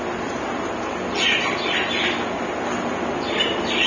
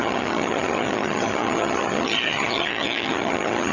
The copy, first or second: second